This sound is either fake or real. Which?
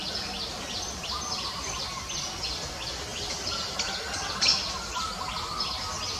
real